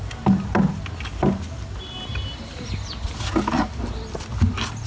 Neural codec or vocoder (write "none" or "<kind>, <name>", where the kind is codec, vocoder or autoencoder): none